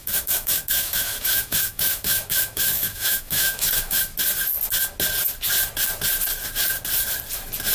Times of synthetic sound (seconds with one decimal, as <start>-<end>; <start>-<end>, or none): 0.0-4.0